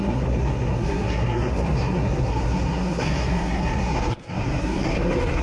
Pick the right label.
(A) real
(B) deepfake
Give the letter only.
B